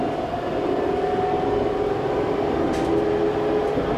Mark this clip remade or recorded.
recorded